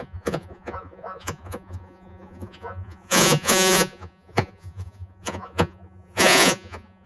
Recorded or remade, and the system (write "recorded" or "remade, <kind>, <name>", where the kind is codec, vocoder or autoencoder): remade, vocoder, Vocos